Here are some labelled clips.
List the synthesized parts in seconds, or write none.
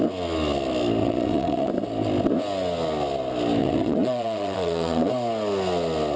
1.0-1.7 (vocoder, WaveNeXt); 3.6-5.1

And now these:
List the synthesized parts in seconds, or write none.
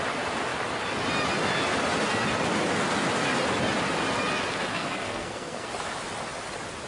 4.7-5.7 (codec, SNAC)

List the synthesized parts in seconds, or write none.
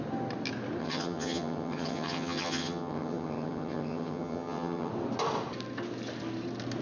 0.8-4.9 (vocoder, HiFi-GAN)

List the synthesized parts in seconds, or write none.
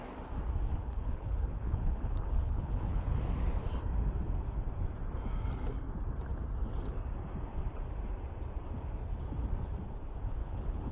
0.7-3.2 (codec, HILCodec); 10.4-10.9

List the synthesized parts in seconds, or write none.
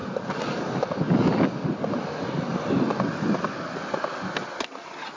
none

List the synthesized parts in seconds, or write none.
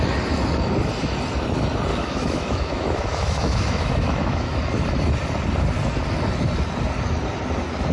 1.9-4.6 (autoencoder, DAC-VAE)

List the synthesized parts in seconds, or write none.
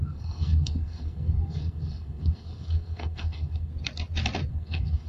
0.0-3.7 (codec, SNAC); 4.5-5.1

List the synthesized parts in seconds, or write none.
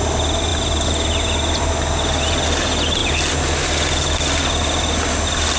none